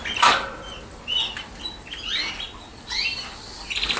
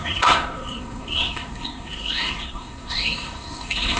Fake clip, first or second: second